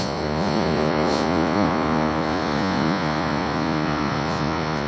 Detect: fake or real fake